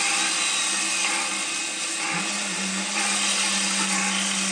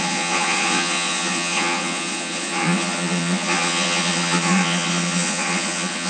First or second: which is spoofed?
second